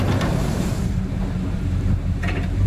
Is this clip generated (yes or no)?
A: yes